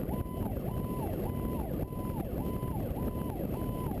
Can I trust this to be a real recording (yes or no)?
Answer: yes